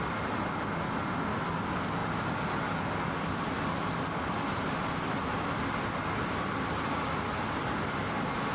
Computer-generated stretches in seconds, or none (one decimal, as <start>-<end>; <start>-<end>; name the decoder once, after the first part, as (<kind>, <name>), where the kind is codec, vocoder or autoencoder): none